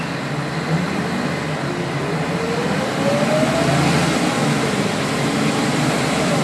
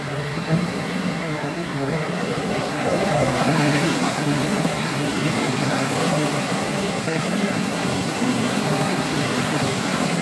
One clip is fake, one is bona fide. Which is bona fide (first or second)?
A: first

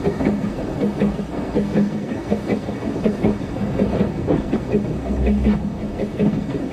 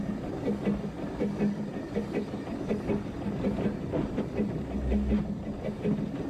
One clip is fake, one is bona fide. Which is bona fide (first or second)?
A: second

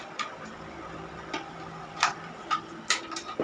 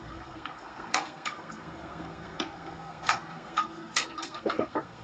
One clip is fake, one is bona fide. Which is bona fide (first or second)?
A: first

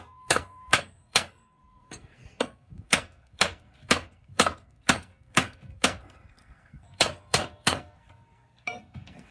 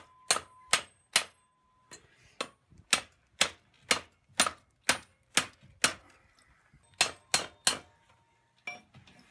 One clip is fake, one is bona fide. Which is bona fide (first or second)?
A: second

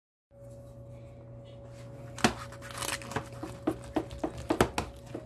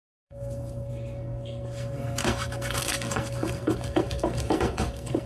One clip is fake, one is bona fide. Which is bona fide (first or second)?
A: first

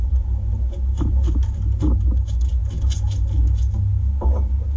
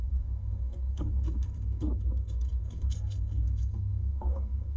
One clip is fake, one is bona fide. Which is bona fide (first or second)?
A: first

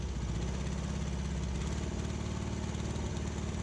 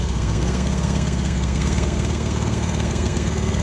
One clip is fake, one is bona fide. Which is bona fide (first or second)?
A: first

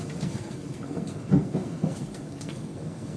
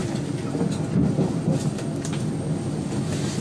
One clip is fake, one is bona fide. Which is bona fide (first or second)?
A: second